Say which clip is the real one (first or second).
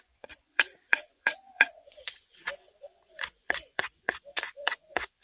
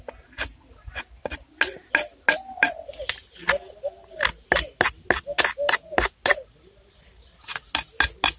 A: second